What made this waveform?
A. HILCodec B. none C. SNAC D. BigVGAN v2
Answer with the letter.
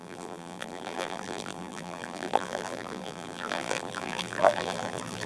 D